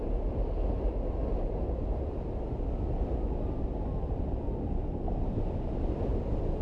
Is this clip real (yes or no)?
yes